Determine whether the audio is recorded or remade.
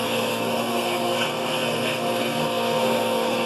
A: remade